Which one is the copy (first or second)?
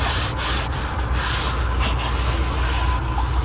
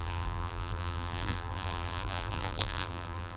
second